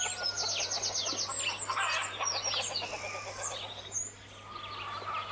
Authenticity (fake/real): real